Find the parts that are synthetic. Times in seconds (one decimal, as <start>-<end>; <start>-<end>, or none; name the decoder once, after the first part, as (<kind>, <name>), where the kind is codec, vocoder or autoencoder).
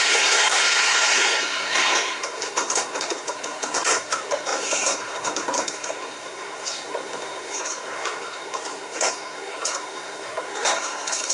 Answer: 0.0-11.3 (codec, SNAC)